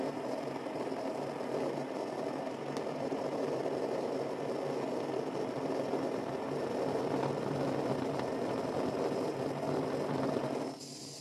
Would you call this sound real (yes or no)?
yes